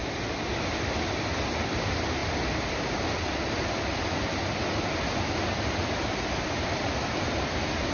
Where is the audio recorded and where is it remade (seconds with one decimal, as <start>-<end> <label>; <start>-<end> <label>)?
0.0-7.9 recorded